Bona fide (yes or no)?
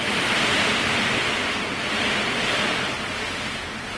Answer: yes